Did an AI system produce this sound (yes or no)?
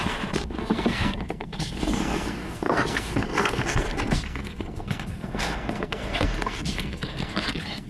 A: yes